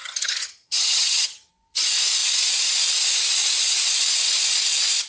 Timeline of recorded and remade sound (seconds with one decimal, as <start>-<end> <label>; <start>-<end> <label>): 0.0-1.5 remade; 1.5-5.1 recorded